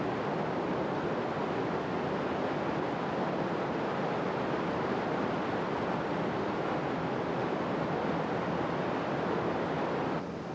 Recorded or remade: recorded